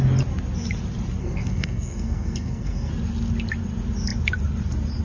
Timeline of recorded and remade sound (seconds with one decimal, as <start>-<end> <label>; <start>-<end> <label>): 0.0-1.2 recorded; 1.2-2.9 remade; 2.9-5.0 recorded